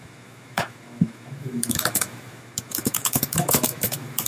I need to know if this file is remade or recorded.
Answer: remade